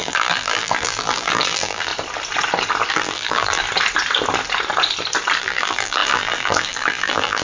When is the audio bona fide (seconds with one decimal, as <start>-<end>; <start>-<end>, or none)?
1.9-2.9; 3.6-5.4